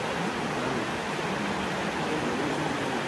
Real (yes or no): yes